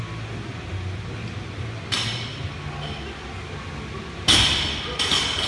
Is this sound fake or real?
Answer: real